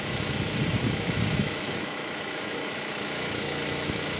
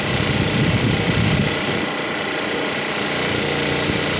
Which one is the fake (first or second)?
first